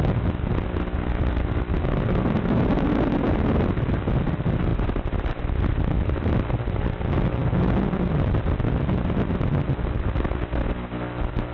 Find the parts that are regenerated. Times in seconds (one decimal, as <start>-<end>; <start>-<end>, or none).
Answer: none

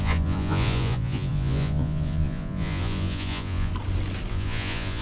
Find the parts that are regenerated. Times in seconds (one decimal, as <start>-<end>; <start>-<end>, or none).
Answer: 0.0-3.7; 4.3-5.0

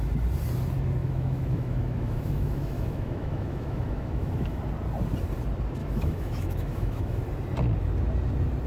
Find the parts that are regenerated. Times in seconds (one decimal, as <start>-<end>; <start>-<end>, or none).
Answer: 1.0-4.6; 5.8-7.2

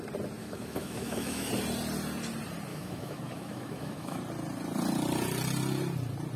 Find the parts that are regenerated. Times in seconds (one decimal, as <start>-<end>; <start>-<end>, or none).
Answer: 0.4-1.5; 2.7-4.2

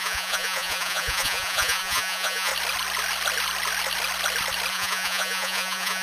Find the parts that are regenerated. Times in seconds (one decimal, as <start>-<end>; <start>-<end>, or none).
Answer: 0.0-2.5; 4.7-6.0

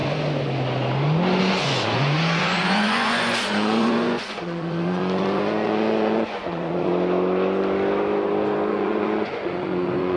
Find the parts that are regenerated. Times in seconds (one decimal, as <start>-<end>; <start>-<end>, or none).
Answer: 1.4-6.9; 8.7-10.2